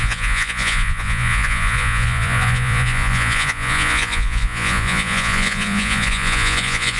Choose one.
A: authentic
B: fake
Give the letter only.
B